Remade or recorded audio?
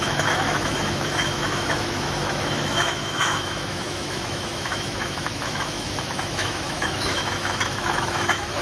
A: remade